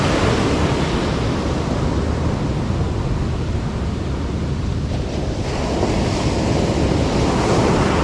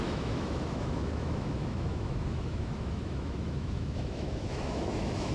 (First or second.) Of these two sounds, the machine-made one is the second